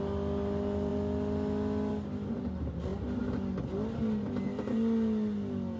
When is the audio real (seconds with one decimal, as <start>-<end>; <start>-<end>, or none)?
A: 0.0-5.8